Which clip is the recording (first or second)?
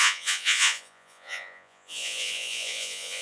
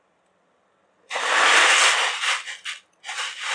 second